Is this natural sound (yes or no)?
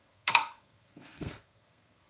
no